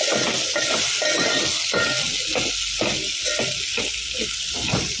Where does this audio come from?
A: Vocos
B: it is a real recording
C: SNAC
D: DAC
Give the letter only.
B